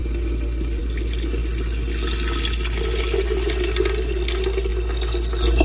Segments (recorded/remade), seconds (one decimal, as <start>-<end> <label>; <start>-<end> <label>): 0.0-5.6 recorded